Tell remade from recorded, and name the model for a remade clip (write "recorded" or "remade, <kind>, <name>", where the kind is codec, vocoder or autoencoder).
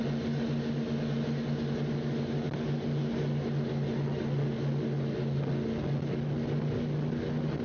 recorded